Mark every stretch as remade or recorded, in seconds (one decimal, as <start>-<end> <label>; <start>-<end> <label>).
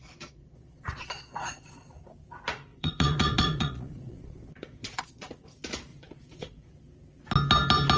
0.0-1.9 remade; 1.9-2.7 recorded; 2.7-5.3 remade; 5.3-5.9 recorded; 5.9-6.7 remade; 6.7-8.0 recorded